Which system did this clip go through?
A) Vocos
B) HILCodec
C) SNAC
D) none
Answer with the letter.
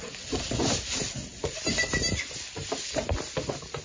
D